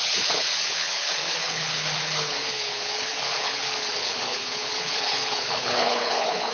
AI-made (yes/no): yes